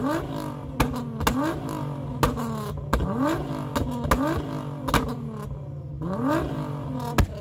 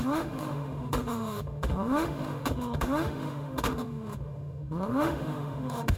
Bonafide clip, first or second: first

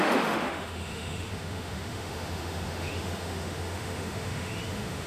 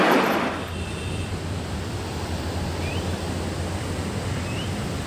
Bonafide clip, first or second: second